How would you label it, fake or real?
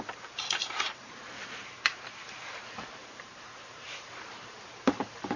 fake